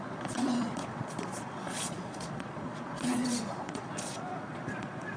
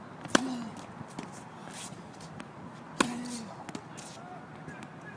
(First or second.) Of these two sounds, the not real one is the first